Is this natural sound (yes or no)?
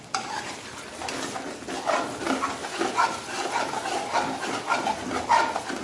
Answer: yes